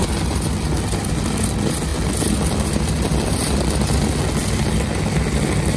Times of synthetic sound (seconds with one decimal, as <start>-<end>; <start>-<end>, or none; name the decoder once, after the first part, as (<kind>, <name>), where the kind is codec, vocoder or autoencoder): none